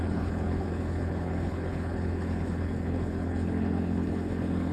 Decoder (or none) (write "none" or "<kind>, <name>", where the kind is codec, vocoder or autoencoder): codec, HILCodec